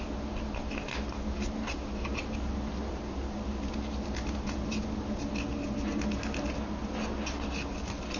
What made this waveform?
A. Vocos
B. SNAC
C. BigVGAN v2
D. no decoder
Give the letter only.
D